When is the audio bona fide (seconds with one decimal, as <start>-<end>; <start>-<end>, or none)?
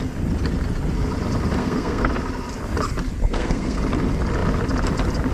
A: 0.0-1.6; 2.1-3.2; 3.8-5.3